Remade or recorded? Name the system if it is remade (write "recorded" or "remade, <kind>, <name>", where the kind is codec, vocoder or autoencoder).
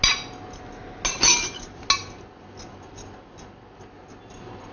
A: recorded